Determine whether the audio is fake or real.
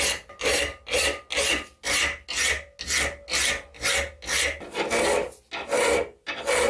real